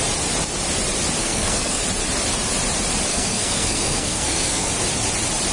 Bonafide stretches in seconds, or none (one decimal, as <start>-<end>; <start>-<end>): 0.0-1.2; 1.8-3.1; 4.7-5.5